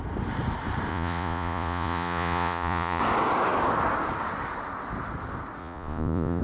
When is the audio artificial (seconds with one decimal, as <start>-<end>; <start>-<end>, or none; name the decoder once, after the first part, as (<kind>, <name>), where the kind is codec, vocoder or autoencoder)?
0.9-3.0 (vocoder, Vocos); 5.6-6.4